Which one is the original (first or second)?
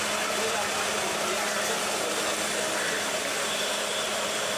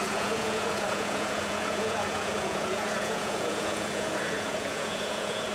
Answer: first